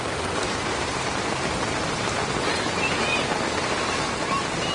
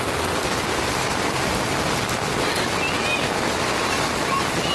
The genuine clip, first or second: second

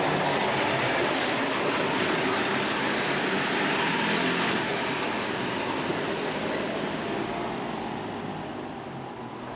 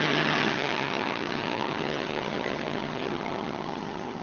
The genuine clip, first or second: first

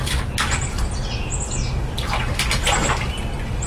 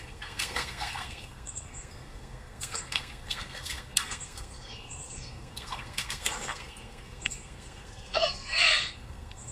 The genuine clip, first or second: first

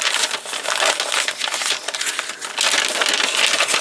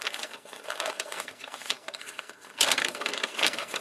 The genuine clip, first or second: first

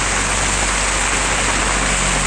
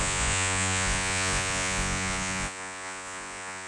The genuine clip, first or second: first